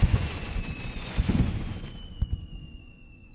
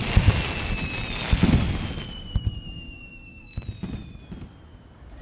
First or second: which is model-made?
first